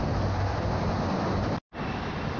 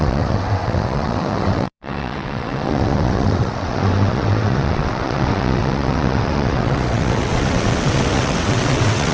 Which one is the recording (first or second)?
first